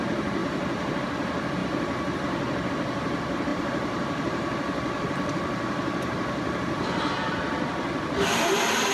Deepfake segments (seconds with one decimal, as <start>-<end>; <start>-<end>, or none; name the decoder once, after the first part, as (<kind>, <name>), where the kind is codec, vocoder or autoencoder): 0.4-1.0 (vocoder, BigVGAN v2); 3.5-7.1

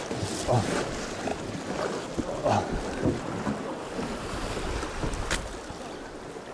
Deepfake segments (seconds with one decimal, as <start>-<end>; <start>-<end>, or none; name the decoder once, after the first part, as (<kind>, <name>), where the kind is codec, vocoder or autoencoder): none

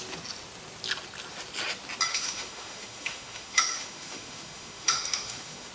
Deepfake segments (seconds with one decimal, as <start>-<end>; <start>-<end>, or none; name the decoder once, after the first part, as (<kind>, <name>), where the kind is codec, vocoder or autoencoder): 2.1-5.7 (autoencoder, DAC-VAE)

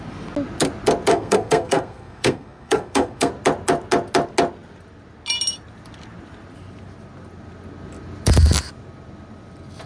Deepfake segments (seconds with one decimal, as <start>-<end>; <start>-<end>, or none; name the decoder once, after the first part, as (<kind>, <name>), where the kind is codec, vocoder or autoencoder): 1.1-3.3 (codec, SNAC)

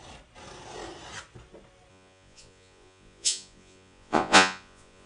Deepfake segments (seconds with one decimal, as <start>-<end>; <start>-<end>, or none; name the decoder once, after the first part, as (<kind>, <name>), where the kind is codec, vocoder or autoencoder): 1.9-5.1 (vocoder, Vocos)

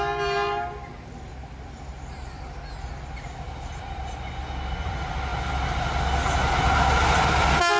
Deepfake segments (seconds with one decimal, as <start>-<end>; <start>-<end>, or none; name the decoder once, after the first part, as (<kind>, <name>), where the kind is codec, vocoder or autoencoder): none

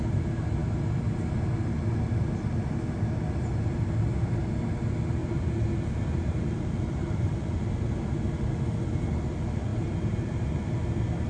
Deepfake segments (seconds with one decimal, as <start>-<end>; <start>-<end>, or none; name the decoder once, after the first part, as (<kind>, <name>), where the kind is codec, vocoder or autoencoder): 5.2-7.7 (vocoder, BigVGAN v2); 9.7-11.3

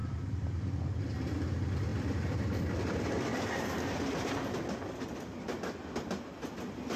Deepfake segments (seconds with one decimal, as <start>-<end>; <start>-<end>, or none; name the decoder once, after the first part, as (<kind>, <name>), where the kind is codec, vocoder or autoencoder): 0.0-0.8 (vocoder, BigVGAN v2); 3.3-4.4